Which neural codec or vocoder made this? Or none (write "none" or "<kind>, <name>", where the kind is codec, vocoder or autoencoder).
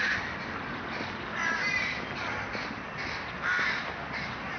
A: none